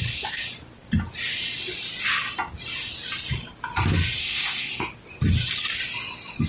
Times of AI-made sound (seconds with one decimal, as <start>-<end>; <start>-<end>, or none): 4.2-4.8

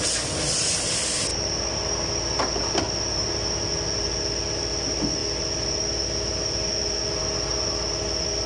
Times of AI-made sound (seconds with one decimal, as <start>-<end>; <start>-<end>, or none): none

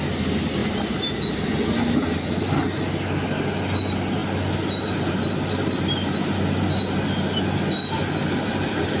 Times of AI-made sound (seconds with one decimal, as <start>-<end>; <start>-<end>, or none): none

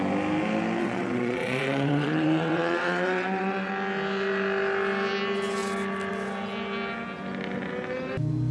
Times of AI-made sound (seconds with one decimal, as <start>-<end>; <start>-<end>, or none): 0.8-3.7

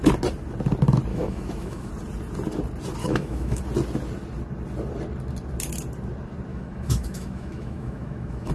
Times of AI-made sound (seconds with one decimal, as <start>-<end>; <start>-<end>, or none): 1.1-1.9; 3.0-3.6; 6.5-8.5

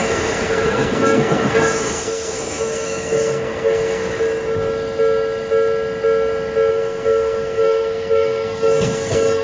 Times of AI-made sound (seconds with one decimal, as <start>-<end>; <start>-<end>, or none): 0.0-4.0; 6.7-9.4

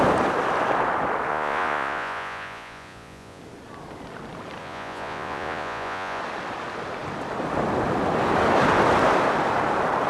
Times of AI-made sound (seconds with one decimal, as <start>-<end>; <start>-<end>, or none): 1.3-3.4; 4.6-6.2